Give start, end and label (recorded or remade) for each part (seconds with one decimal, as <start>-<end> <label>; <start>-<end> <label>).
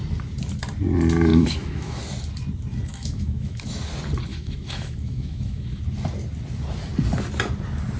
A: 0.0-1.3 recorded; 1.3-2.0 remade; 2.0-2.9 recorded; 2.9-3.8 remade; 3.8-4.3 recorded; 4.3-5.8 remade; 5.8-8.0 recorded